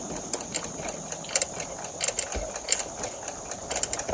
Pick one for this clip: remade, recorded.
recorded